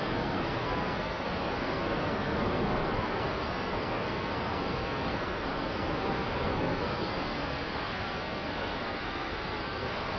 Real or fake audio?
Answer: fake